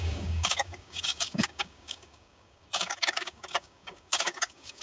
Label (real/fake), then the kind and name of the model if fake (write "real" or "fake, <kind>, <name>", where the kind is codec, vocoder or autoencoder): fake, codec, DAC